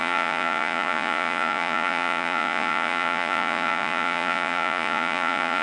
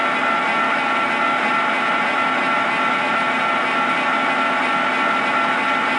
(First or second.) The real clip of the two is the second